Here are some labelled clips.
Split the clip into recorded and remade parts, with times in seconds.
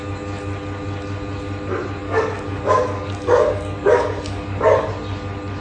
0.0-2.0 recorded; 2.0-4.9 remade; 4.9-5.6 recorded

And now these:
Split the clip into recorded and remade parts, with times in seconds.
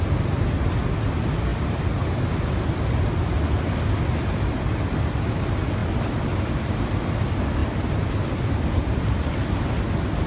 0.0-10.3 recorded